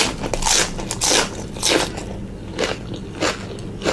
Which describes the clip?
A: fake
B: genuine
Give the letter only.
B